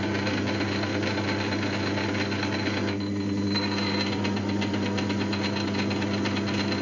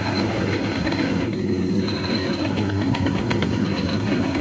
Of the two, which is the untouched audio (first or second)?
first